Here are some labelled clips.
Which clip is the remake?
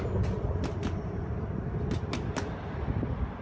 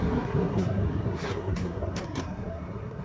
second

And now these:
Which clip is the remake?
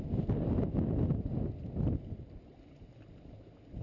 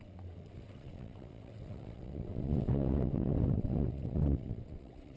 second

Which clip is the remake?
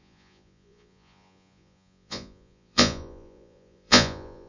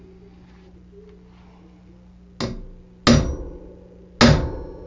first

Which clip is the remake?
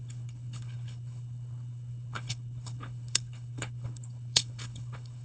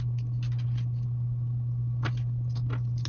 first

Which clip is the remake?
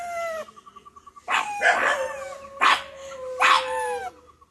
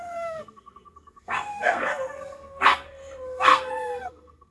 second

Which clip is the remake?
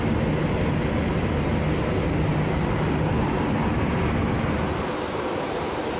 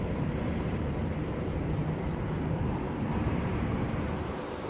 second